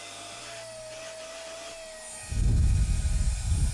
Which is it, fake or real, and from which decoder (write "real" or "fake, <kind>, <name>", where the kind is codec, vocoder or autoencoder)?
real